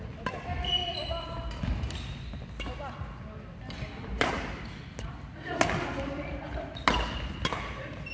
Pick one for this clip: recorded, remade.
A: recorded